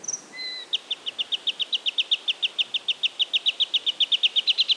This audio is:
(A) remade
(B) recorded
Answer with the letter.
B